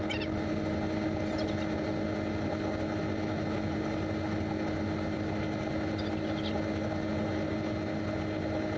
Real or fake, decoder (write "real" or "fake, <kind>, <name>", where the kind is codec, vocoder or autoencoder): real